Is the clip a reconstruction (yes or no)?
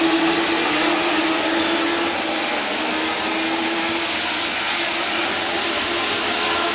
no